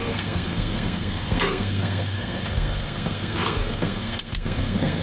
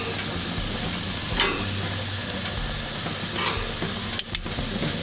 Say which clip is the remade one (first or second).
first